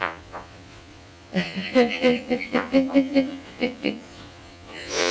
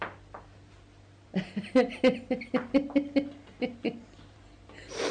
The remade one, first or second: first